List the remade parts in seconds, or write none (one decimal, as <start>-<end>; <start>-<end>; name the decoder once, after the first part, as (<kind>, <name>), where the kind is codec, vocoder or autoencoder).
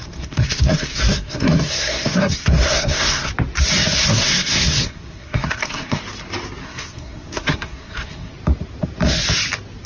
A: 0.0-3.3 (codec, SNAC); 4.0-6.0; 6.6-8.3